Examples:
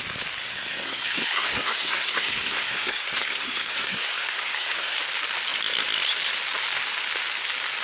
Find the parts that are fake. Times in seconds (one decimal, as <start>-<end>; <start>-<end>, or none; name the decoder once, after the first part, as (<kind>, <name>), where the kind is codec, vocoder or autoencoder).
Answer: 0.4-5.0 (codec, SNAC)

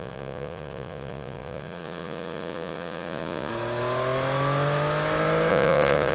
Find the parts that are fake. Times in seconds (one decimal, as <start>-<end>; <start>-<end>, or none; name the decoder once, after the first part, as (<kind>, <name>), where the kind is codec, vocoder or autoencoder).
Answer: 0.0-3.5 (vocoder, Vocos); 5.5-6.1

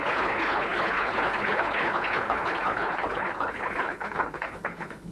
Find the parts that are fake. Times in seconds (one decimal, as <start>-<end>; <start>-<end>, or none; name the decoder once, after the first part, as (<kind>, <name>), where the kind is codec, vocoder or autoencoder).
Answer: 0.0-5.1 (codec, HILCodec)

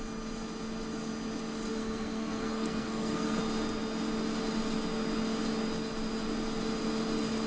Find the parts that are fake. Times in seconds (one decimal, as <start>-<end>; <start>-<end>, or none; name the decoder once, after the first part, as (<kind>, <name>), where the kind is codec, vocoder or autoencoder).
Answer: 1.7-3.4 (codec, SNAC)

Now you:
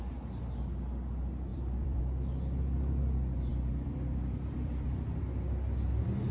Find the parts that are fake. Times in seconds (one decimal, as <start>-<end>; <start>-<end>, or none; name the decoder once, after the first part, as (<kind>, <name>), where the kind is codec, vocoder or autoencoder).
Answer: 1.5-2.0 (vocoder, BigVGAN v2); 3.5-5.2

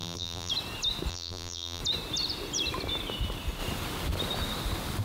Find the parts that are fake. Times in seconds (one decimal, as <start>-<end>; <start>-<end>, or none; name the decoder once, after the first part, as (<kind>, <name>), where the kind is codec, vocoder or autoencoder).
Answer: 0.0-0.5 (vocoder, BigVGAN v2); 1.1-1.8

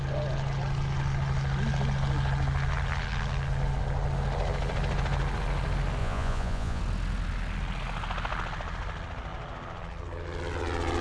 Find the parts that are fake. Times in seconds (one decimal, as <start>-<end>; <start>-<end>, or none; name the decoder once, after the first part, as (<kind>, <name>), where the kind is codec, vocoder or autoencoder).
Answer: 6.0-6.8 (vocoder, Vocos)

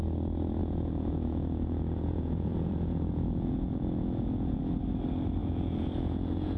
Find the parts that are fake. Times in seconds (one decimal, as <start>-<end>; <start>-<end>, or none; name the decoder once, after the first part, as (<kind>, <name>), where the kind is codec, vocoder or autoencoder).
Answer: 0.6-4.6 (vocoder, Vocos); 5.4-6.6